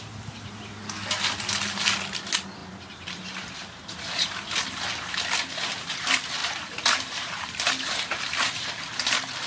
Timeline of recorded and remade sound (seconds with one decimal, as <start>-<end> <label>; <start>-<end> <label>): 0.0-2.6 recorded; 2.6-4.5 remade; 4.5-6.4 recorded; 6.4-8.7 remade; 8.7-9.5 recorded